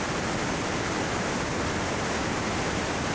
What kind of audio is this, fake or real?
real